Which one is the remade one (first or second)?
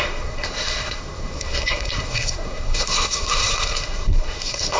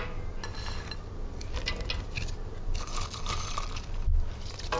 first